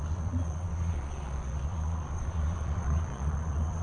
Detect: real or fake fake